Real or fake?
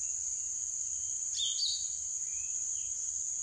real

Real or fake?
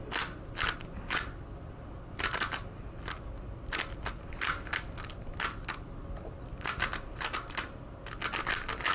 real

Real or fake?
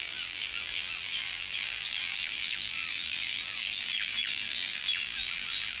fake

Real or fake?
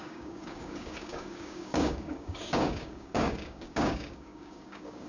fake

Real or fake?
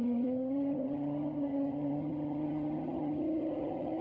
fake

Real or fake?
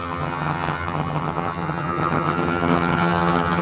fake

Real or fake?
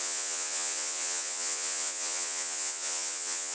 fake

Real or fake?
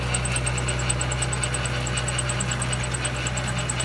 real